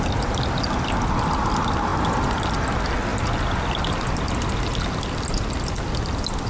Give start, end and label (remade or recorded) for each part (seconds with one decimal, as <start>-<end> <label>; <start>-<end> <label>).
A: 0.0-6.5 recorded